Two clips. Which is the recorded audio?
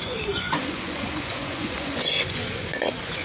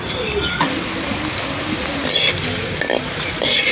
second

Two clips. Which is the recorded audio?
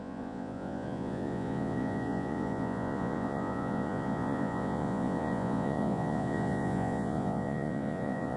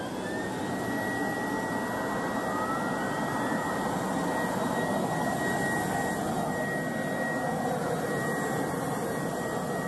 second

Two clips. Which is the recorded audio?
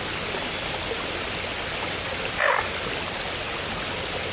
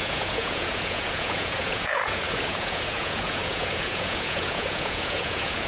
first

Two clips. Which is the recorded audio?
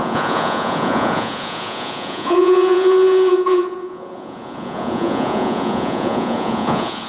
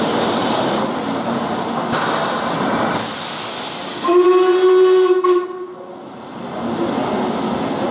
second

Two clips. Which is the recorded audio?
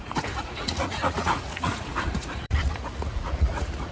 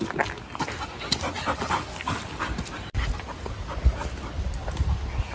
second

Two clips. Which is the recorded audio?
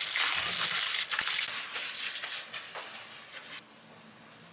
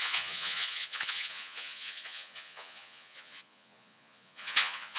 first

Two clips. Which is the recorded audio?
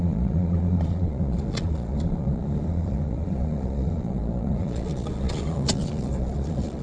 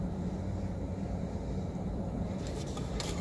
second